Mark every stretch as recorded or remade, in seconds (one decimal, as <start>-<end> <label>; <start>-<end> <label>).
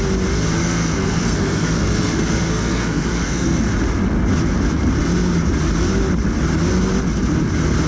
0.0-0.6 recorded; 0.6-3.6 remade; 3.6-7.9 recorded